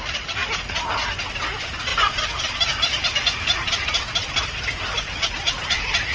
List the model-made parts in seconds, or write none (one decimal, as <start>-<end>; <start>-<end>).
0.0-0.4; 1.5-1.9; 2.4-6.1